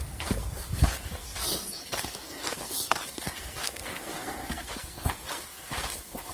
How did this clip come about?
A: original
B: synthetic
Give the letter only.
B